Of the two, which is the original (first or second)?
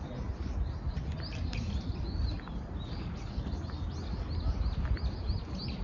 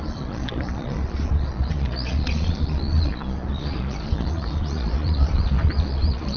first